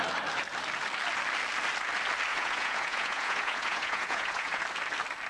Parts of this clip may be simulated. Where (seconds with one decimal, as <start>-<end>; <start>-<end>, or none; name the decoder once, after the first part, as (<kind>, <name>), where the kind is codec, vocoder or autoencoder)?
2.3-4.6 (vocoder, Vocos)